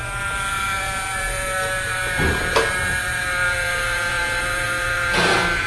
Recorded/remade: remade